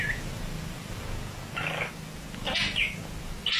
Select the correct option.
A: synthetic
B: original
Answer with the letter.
B